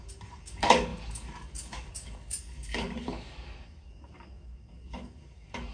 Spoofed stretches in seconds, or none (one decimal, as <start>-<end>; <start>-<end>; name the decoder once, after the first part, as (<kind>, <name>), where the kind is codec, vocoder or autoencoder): 0.0-5.7 (codec, DAC)